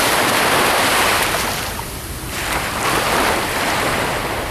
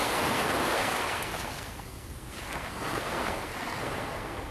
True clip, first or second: first